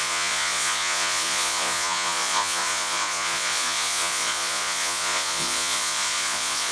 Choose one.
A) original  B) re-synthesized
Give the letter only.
B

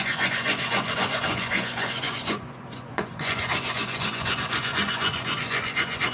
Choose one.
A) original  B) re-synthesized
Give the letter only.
B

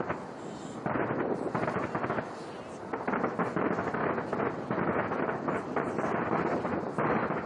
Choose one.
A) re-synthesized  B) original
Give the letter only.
B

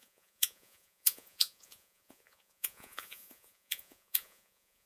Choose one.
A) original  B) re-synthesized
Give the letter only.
B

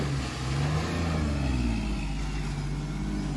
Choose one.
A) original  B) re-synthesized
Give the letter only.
A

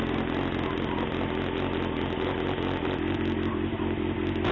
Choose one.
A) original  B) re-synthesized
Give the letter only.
A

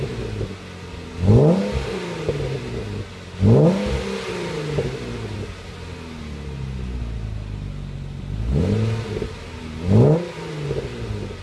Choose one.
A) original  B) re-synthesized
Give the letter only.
A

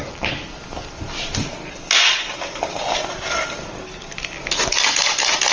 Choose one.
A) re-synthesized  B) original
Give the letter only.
B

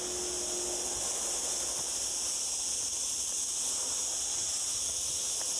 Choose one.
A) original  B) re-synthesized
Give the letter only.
A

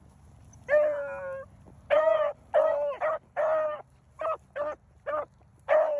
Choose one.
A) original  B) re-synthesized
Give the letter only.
A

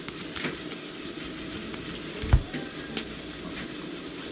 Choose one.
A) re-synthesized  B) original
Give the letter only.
B